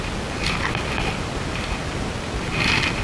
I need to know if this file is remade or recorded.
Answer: recorded